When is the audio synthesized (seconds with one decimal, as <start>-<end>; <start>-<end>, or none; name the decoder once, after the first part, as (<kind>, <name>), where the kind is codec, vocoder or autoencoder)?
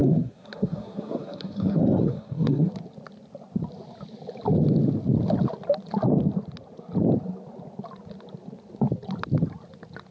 0.0-2.7 (codec, SNAC)